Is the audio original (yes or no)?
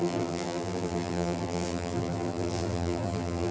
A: no